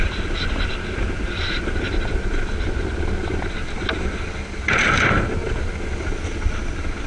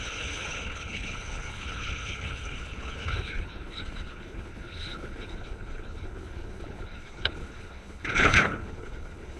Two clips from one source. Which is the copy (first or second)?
second